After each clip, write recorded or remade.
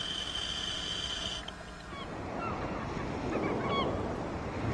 recorded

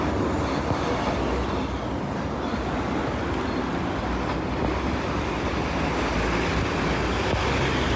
recorded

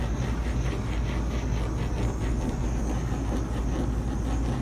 recorded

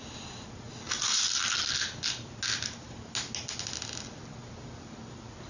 recorded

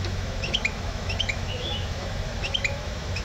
remade